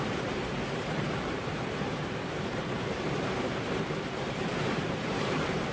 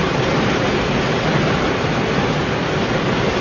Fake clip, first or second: first